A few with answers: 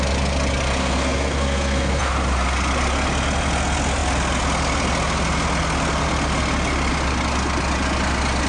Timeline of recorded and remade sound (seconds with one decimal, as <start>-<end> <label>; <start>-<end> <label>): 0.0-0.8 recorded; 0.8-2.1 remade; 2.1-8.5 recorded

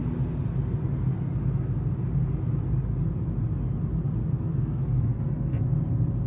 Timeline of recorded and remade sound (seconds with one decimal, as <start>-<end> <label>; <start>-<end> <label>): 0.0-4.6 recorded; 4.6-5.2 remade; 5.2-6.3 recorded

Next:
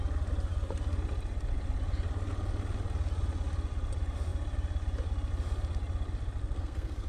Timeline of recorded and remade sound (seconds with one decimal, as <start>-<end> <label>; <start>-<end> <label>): 0.0-6.4 recorded; 6.4-7.1 remade

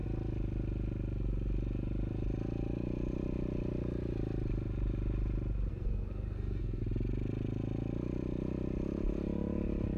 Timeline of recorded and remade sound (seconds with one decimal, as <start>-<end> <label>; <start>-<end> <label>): 0.0-5.7 recorded; 5.7-6.8 remade; 6.8-10.0 recorded

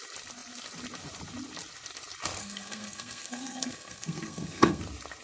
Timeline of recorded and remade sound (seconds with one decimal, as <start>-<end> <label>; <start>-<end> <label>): 0.0-2.4 recorded; 2.4-4.8 remade; 4.8-5.2 recorded

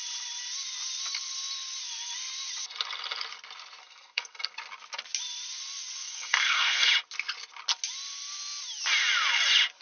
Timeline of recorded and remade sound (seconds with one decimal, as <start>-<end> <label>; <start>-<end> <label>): 0.0-3.8 recorded; 3.8-4.5 remade; 4.5-6.0 recorded; 6.0-6.9 remade; 6.9-9.8 recorded

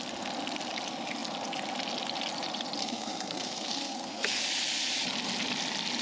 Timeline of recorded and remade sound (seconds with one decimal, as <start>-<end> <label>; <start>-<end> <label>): 0.0-2.8 recorded; 2.8-4.4 remade; 4.4-6.0 recorded

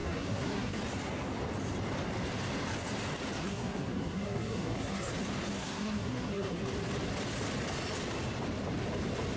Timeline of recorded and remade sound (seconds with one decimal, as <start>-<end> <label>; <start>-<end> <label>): 0.0-0.8 remade; 0.8-3.4 recorded; 3.4-5.1 remade; 5.1-5.6 recorded; 5.6-6.6 remade; 6.6-9.4 recorded